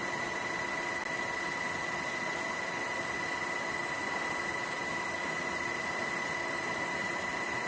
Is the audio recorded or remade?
recorded